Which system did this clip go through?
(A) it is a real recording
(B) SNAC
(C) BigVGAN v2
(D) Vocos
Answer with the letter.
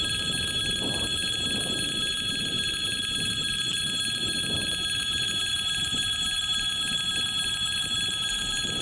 C